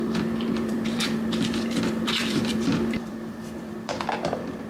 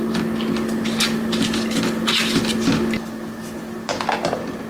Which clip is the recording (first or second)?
second